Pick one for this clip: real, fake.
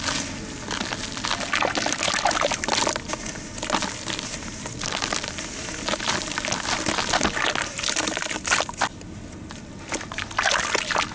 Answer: real